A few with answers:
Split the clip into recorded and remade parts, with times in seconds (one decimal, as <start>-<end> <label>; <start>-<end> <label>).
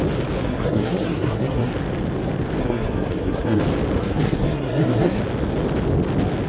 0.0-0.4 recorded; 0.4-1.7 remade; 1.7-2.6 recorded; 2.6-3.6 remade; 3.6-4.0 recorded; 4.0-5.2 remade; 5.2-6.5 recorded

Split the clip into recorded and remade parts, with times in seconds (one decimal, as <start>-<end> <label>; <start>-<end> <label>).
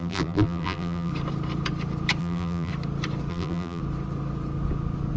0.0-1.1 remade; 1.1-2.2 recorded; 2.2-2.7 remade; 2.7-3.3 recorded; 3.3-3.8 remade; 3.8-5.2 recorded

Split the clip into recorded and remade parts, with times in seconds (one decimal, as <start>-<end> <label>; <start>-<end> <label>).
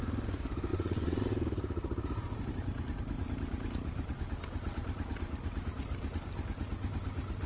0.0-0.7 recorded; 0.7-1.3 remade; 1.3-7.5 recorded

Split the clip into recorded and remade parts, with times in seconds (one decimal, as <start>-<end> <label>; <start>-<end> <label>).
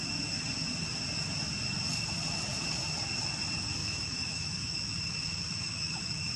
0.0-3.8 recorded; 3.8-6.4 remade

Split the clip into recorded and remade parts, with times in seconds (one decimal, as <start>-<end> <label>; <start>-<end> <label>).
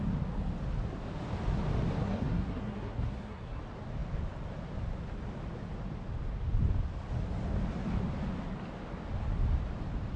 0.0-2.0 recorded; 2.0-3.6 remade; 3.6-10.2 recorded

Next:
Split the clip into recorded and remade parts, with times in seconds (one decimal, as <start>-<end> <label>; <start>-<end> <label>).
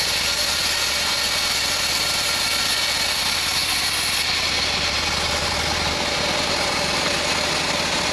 0.0-8.1 recorded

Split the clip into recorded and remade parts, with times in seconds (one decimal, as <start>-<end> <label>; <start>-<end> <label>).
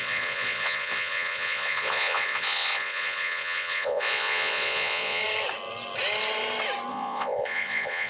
0.0-5.2 remade; 5.2-6.9 recorded; 6.9-8.1 remade